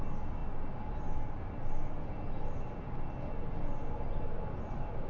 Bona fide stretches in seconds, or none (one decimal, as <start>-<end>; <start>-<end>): 0.0-5.1